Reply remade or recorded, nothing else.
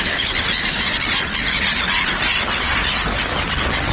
recorded